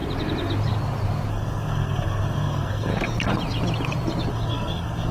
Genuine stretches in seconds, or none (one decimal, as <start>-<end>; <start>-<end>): 0.0-1.3; 2.9-4.3

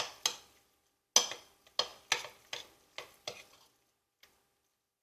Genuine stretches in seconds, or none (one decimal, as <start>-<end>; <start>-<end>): 0.0-5.0

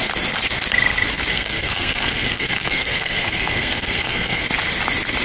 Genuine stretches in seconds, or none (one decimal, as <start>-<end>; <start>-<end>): 0.0-1.3; 4.4-5.2

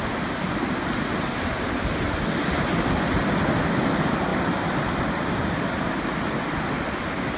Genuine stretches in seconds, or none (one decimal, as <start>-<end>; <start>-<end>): 0.0-7.4

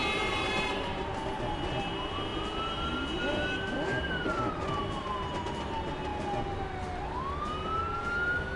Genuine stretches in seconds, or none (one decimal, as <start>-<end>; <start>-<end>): 1.1-8.6